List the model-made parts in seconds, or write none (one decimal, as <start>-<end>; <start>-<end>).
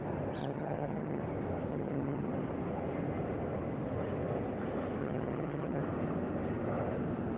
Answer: 0.4-1.2; 1.7-2.3; 5.0-5.8